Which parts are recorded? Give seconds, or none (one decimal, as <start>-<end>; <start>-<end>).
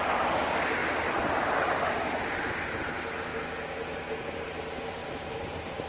0.8-3.8; 5.0-5.9